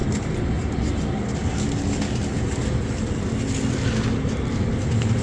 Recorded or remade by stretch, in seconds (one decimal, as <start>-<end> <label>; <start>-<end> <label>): 0.0-5.2 recorded

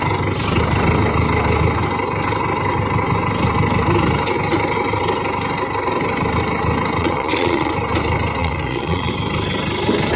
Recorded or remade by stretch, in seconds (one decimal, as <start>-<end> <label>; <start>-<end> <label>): 0.0-7.0 recorded; 7.0-7.7 remade; 7.7-8.4 recorded; 8.4-9.1 remade; 9.1-10.2 recorded

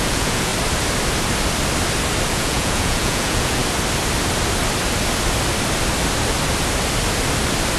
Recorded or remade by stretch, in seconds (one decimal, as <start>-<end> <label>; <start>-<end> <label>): 0.0-0.5 remade; 0.5-2.3 recorded; 2.3-3.6 remade; 3.6-7.8 recorded

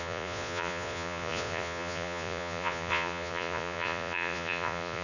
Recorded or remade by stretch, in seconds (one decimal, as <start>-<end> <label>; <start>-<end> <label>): 0.0-5.0 remade

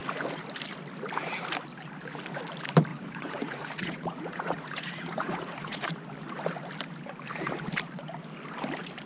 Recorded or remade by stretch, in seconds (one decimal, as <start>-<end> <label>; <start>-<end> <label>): 0.0-2.9 recorded; 2.9-5.9 remade; 5.9-9.1 recorded